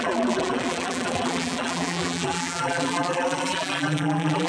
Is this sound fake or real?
fake